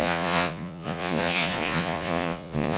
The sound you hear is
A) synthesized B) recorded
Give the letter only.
A